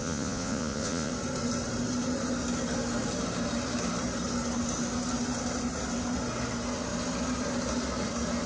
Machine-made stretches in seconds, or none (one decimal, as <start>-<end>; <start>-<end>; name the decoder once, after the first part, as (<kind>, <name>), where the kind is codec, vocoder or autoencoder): 0.0-1.1 (vocoder, Vocos)